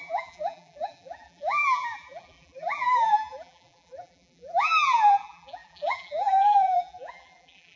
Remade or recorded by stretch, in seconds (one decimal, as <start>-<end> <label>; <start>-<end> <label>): 0.0-7.8 remade